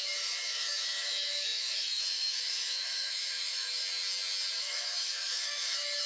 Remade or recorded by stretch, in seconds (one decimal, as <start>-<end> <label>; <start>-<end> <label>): 0.0-3.8 remade; 3.8-4.6 recorded; 4.6-6.1 remade